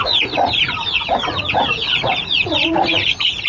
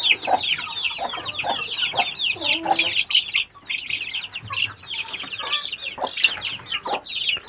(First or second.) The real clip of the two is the second